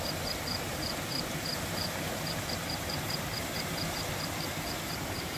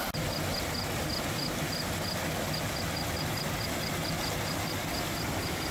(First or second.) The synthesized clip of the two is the first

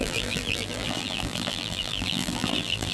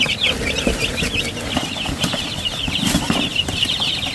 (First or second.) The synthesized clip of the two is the first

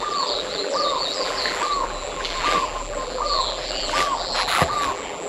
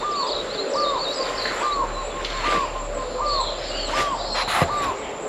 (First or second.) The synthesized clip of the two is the first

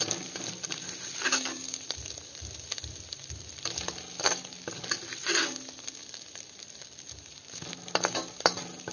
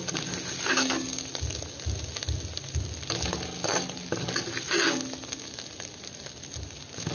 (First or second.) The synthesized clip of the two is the first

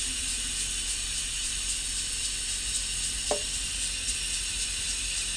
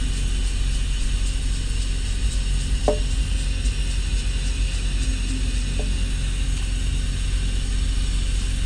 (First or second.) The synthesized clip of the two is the first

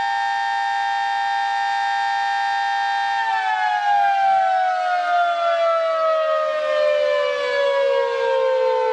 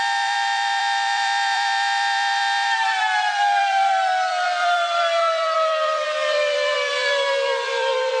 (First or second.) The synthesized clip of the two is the second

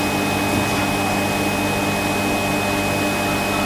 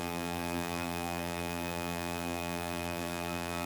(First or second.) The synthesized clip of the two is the second